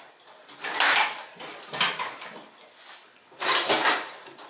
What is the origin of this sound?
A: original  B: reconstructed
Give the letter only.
A